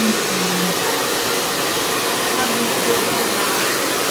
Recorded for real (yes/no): yes